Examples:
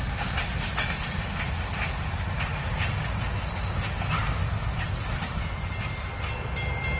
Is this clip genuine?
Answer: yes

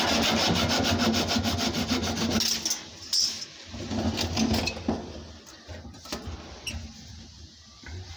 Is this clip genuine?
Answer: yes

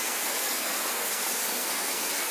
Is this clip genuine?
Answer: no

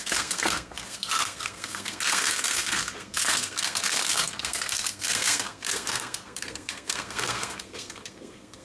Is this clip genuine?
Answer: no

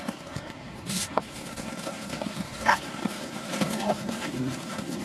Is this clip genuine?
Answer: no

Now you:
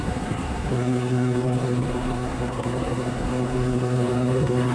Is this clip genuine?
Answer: no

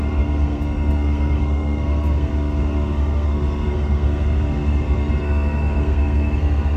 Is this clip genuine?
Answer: no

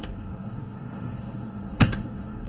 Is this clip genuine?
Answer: no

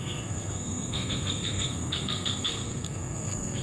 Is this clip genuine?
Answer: no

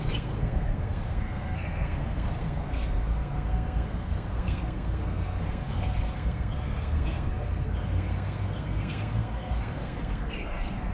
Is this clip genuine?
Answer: no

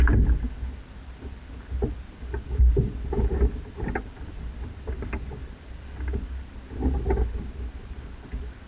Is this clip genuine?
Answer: yes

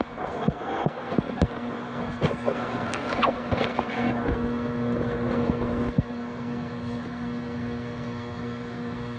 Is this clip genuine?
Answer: no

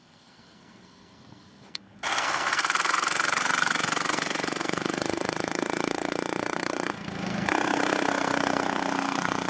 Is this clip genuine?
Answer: no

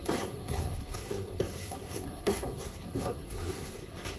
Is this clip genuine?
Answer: no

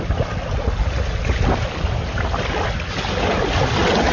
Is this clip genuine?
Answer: yes